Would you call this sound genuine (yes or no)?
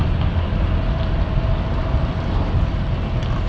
yes